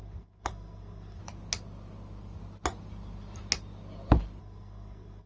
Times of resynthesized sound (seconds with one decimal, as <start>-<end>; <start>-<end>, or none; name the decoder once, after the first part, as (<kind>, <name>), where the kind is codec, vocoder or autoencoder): 0.0-1.2 (codec, SNAC); 4.4-5.3